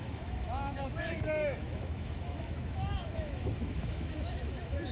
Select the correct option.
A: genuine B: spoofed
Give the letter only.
B